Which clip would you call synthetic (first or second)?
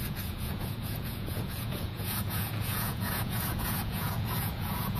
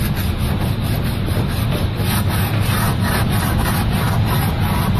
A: first